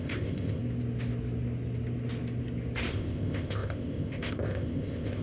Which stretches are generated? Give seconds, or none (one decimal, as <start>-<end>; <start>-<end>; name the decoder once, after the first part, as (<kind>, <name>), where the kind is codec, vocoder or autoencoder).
0.0-0.6 (codec, ZipCodec); 2.9-5.2